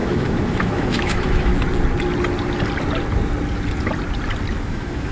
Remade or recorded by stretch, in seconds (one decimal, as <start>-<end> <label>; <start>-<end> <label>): 0.0-1.5 remade; 1.5-4.6 recorded; 4.6-5.1 remade